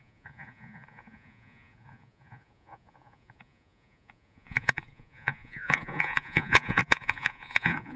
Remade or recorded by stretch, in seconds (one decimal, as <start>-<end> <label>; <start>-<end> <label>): 0.0-8.0 remade